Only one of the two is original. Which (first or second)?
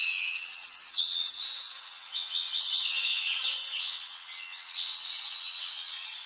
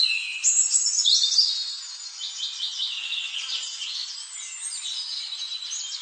second